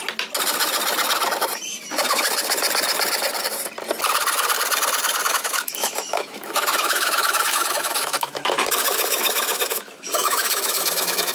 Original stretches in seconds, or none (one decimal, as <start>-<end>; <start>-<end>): 0.0-5.3